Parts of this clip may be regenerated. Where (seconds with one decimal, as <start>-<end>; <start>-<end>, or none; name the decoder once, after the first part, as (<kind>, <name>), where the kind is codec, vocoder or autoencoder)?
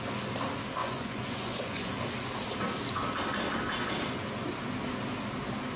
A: 0.8-1.9 (vocoder, Vocos)